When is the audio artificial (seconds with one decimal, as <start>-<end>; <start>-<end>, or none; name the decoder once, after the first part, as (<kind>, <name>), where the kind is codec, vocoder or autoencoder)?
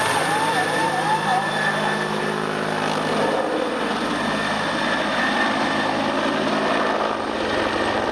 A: none